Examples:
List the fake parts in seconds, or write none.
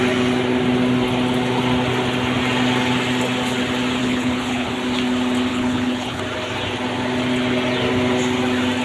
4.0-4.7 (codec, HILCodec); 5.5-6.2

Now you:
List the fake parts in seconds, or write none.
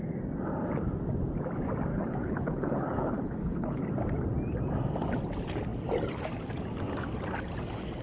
1.9-3.8 (codec, HILCodec)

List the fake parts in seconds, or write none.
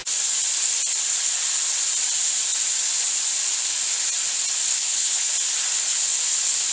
4.7-5.3 (codec, HILCodec)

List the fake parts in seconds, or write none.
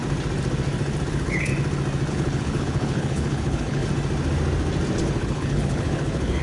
1.1-1.5 (codec, HILCodec); 2.1-3.8; 5.0-6.4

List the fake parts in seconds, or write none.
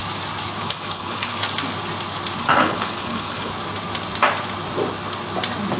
0.6-1.3 (codec, HILCodec); 2.4-3.5